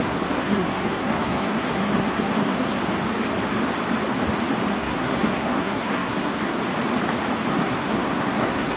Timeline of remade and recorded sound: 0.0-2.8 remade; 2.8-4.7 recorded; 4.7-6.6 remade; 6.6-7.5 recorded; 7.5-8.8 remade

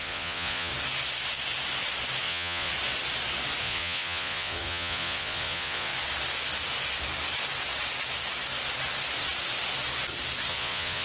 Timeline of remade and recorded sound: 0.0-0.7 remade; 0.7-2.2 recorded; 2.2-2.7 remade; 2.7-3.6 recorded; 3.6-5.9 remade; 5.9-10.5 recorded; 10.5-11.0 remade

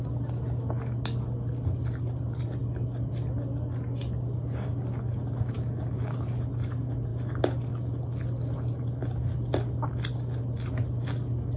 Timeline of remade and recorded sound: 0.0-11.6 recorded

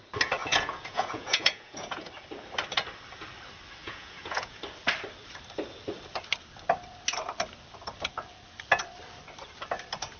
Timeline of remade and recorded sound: 0.0-0.4 recorded; 0.4-2.1 remade; 2.1-3.8 recorded; 3.8-4.6 remade; 4.6-10.2 recorded

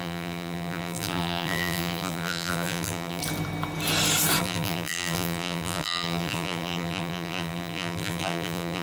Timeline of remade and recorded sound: 0.0-3.2 remade; 3.2-4.4 recorded; 4.4-8.8 remade

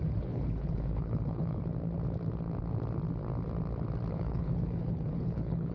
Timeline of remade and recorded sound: 0.0-1.6 remade; 1.6-4.1 recorded; 4.1-5.7 remade